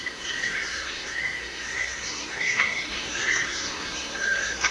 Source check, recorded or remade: remade